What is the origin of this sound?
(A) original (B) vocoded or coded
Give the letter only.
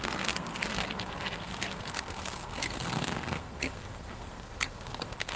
B